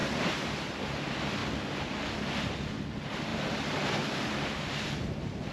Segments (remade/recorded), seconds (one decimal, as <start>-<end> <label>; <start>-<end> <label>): 0.0-0.7 remade; 0.7-3.3 recorded; 3.3-4.0 remade; 4.0-5.5 recorded